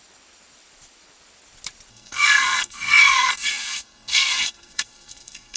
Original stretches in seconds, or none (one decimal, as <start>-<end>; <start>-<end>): 0.0-1.9